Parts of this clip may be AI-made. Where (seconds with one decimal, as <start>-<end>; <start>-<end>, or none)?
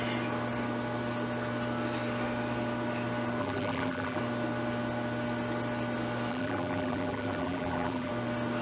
3.4-4.2; 6.3-8.1